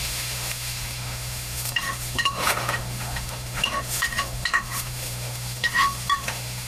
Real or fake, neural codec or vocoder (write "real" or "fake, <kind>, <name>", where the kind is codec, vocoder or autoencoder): fake, autoencoder, DAC-VAE